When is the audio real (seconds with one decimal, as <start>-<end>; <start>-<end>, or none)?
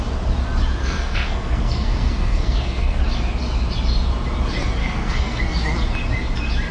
0.0-0.8; 3.0-4.8; 5.4-6.7